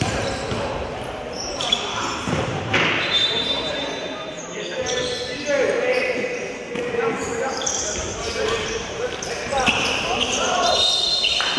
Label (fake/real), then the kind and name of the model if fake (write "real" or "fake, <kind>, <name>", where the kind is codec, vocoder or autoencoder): fake, vocoder, BigVGAN v2